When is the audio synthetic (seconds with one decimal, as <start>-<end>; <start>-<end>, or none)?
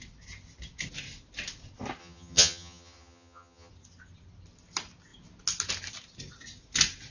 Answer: 2.0-3.7